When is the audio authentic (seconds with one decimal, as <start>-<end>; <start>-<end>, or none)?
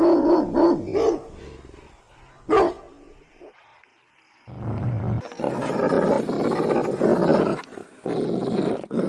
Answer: 0.0-9.1